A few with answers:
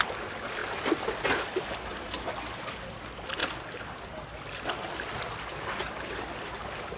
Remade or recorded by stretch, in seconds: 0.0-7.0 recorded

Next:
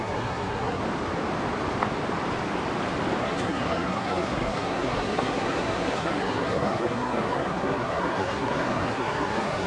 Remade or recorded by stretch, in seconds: 0.0-0.8 remade; 0.8-3.2 recorded; 3.2-9.7 remade

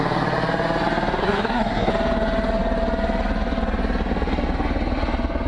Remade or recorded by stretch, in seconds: 0.0-1.2 recorded; 1.2-1.9 remade; 1.9-5.5 recorded